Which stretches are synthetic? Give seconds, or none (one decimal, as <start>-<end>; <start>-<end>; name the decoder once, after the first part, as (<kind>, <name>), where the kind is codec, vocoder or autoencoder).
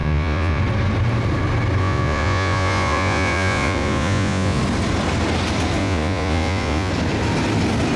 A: 0.0-0.6 (vocoder, Vocos); 1.8-4.6; 5.8-6.9